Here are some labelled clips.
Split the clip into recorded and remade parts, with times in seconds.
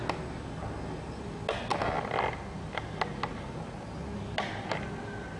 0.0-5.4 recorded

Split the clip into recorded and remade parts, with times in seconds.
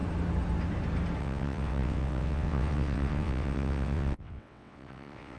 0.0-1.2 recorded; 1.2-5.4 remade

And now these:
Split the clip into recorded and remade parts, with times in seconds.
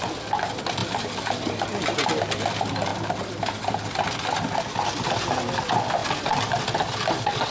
0.0-7.5 recorded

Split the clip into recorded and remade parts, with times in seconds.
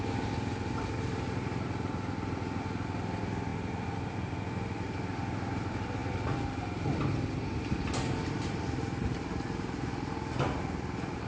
0.0-11.3 recorded